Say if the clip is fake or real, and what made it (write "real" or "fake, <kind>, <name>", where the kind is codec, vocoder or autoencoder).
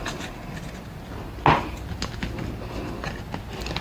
real